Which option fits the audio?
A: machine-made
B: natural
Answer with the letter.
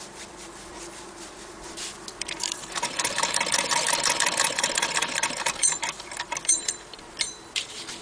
A